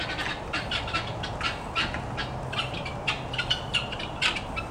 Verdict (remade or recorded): recorded